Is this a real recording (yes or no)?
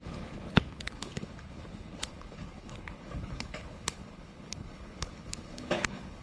no